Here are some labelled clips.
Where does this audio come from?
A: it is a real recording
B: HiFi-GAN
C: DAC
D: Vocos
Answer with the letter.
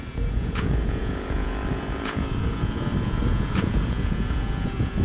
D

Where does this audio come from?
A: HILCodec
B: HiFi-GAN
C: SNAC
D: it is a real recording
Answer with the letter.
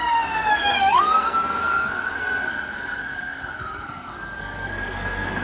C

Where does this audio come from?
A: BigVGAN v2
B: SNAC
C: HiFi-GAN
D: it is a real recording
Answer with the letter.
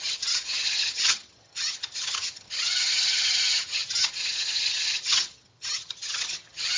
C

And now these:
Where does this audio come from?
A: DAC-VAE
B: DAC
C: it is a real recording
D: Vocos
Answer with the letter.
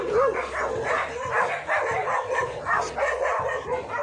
C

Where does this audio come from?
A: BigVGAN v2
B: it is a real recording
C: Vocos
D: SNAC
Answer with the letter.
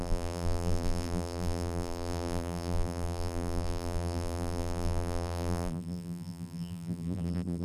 A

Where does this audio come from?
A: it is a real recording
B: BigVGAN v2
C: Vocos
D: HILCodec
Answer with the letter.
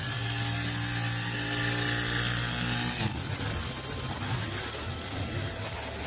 A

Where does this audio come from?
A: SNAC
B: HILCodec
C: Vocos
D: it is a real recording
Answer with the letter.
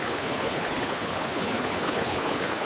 B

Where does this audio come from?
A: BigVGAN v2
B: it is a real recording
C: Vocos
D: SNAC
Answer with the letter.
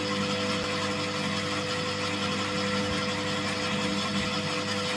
B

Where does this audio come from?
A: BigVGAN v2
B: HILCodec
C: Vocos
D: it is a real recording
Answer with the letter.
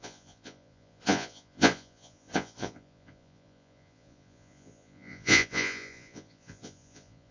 C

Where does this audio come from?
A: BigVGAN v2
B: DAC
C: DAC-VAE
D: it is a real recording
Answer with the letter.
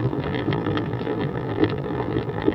A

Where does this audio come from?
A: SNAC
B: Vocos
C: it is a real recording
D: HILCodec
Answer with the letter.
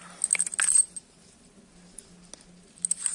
C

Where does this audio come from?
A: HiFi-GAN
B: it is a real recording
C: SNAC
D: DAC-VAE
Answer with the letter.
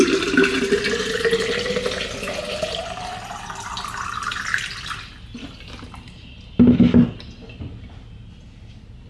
B